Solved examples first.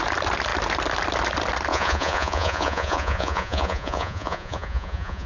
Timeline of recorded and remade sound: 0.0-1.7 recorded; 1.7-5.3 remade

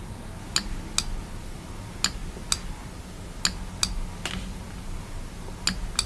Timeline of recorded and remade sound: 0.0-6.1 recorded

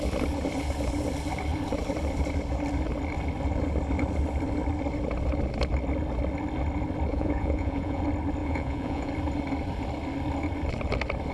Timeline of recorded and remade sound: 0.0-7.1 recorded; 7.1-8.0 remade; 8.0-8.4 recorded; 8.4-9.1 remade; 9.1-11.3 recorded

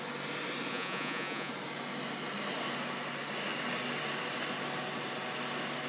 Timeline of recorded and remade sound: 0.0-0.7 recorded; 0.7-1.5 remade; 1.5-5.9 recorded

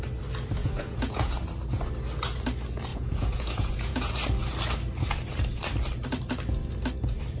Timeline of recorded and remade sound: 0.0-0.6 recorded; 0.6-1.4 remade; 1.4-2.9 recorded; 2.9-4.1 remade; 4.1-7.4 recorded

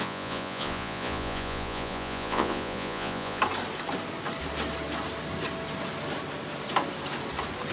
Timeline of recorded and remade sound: 0.0-3.4 remade; 3.4-7.7 recorded

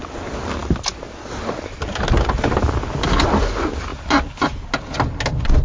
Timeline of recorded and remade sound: 0.0-5.6 recorded